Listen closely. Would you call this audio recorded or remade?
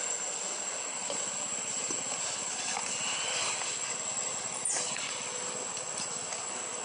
recorded